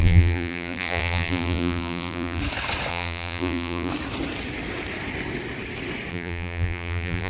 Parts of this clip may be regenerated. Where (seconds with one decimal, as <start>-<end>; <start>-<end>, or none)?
0.0-2.4; 2.9-3.9; 6.1-7.3